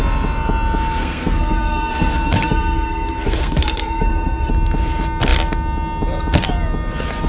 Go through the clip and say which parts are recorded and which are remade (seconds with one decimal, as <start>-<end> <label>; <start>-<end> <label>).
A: 0.0-1.0 recorded; 1.0-4.5 remade; 4.5-7.3 recorded